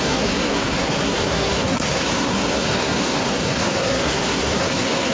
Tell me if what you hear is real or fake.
fake